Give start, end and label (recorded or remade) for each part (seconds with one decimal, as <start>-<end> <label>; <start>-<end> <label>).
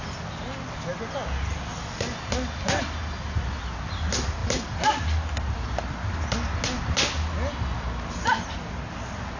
0.0-9.4 recorded